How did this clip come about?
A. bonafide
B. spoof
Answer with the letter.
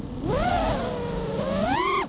A